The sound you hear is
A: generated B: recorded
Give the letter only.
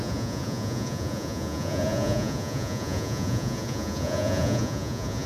A